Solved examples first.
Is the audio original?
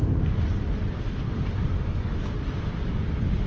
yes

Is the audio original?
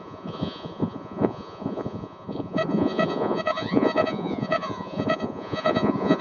no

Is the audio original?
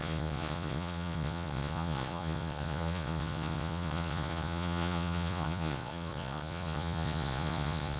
no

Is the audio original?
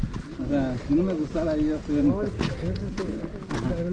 yes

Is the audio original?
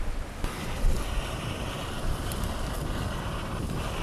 yes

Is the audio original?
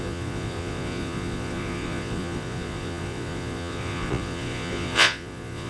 no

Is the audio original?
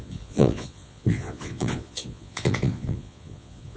no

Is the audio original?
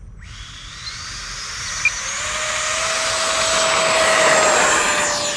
yes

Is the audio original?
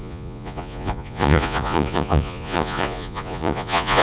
no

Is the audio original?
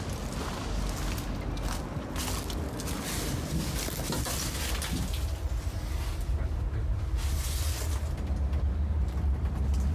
yes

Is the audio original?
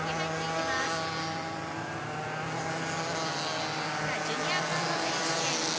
yes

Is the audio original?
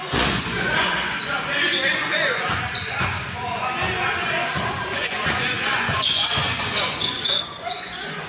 no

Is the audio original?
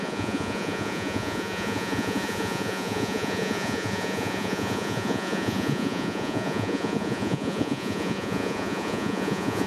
no